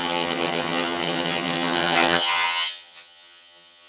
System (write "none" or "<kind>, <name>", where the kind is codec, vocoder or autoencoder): vocoder, HiFi-GAN